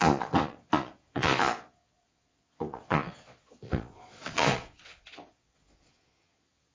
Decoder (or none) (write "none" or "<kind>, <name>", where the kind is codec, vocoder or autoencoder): vocoder, Vocos